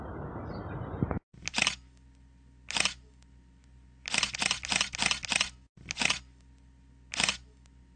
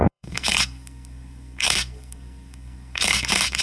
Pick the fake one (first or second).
second